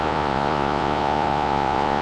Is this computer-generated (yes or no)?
yes